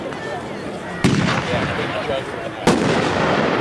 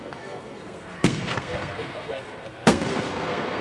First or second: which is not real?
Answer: second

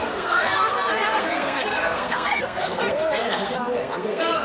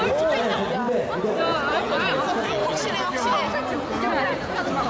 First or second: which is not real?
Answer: first